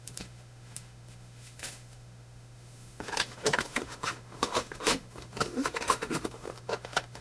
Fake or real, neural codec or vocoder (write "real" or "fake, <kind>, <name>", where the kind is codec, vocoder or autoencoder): fake, autoencoder, DAC-VAE